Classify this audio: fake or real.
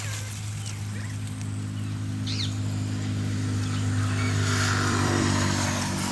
fake